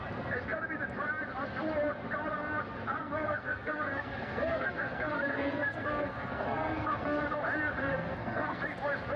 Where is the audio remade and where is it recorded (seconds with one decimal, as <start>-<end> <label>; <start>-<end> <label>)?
0.0-3.0 recorded; 3.0-7.2 remade; 7.2-7.9 recorded; 7.9-8.6 remade; 8.6-9.2 recorded